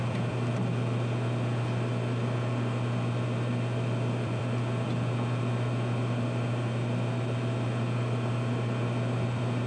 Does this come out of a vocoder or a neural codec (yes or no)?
yes